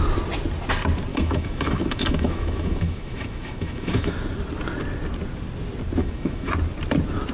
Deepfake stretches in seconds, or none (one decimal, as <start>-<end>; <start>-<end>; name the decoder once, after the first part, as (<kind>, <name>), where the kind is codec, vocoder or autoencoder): 1.1-4.1 (autoencoder, DAC-VAE); 6.0-6.5